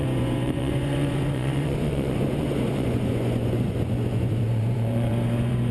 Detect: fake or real fake